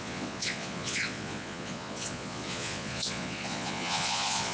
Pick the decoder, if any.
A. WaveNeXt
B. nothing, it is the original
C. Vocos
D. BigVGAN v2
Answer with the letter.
C